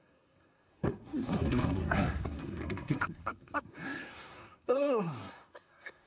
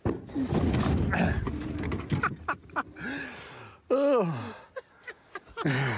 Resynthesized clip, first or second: first